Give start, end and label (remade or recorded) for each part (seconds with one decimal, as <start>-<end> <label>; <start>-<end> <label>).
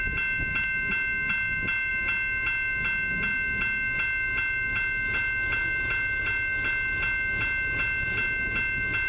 0.0-9.1 recorded